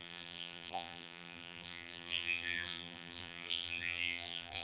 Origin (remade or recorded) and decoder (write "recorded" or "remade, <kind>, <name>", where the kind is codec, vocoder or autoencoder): remade, vocoder, BigVGAN v2